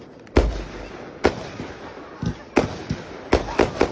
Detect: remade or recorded recorded